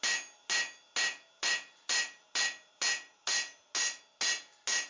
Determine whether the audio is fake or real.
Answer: real